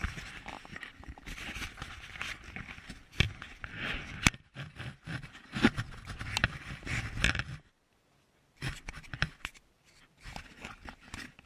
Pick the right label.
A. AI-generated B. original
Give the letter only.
B